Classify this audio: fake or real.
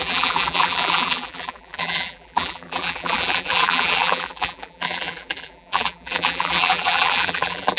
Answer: fake